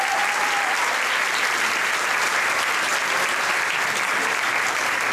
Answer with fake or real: real